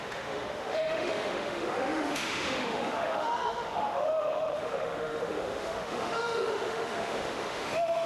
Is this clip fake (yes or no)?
yes